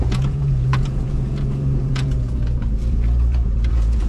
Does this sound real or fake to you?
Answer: fake